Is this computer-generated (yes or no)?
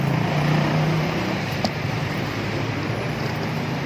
yes